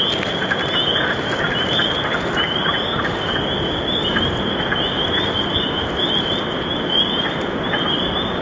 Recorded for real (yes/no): yes